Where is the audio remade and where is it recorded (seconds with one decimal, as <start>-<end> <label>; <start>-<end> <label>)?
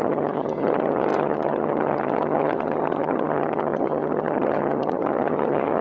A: 0.0-5.8 remade